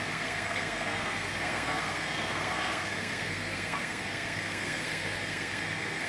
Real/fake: fake